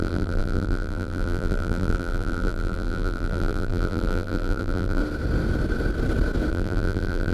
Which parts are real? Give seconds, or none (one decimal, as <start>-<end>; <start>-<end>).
5.0-6.5